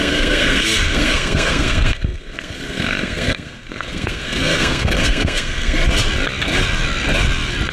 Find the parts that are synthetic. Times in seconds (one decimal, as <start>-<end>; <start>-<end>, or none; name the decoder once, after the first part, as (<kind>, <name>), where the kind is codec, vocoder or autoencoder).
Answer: 0.0-5.8 (codec, SNAC)